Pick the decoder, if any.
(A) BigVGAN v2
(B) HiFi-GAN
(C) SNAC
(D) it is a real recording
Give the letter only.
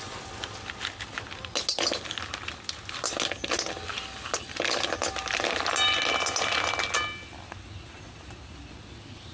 D